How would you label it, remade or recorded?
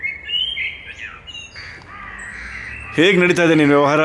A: recorded